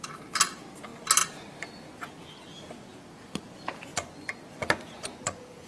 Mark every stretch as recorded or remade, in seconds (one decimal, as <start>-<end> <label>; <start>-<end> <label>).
0.0-3.9 recorded; 3.9-5.7 remade